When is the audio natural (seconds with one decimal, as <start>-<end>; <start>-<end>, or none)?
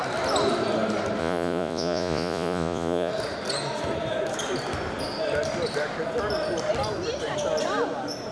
0.0-1.2; 3.1-8.3